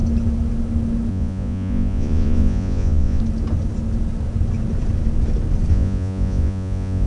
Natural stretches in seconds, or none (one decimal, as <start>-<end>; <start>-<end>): 0.0-1.1; 3.2-5.7